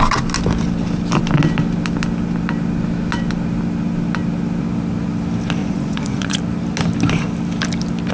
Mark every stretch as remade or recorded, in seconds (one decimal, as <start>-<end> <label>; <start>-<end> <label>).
0.0-5.6 recorded; 5.6-6.4 remade; 6.4-8.1 recorded